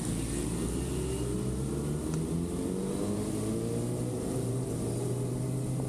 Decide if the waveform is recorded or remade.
recorded